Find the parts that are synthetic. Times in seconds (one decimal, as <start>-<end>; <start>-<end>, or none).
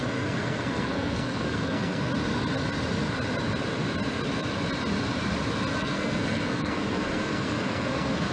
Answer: 0.0-2.1; 5.8-8.3